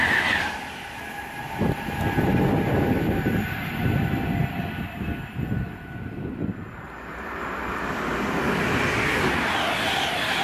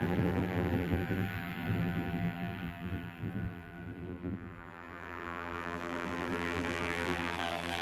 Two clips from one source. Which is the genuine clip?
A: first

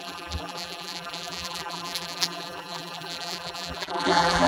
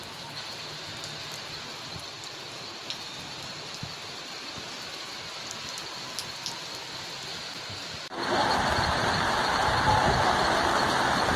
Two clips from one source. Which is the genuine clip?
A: second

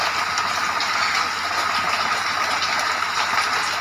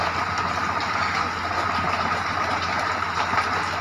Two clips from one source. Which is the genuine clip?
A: first